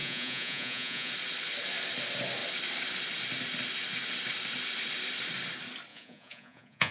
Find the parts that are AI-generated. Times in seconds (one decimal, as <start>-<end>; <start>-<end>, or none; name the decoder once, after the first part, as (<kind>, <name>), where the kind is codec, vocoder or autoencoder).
0.0-1.1 (vocoder, Vocos); 5.9-6.9